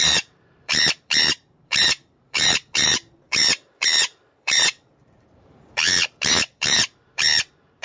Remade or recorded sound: remade